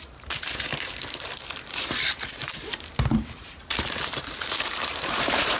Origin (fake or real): fake